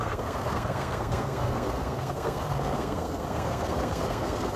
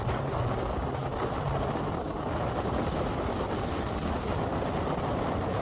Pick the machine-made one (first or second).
first